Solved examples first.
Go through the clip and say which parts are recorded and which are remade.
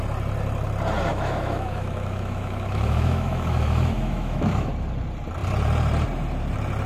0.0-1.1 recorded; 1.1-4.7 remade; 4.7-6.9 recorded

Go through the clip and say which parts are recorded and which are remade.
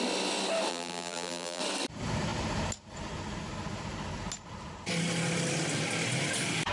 0.0-0.7 recorded; 0.7-1.6 remade; 1.6-6.7 recorded